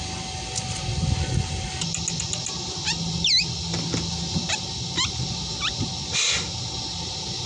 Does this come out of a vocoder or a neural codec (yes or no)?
no